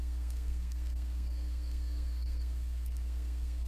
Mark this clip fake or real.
fake